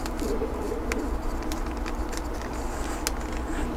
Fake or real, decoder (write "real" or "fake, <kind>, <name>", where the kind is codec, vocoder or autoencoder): real